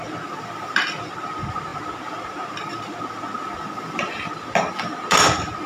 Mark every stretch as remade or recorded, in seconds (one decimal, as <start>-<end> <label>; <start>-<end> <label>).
0.0-5.7 recorded